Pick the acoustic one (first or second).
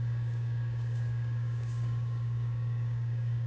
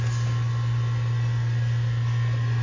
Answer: second